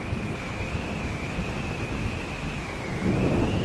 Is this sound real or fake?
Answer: real